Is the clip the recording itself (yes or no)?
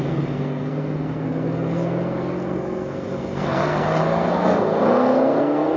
no